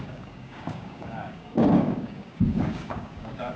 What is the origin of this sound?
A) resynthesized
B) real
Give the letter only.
A